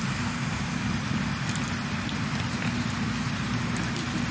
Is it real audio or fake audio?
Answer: real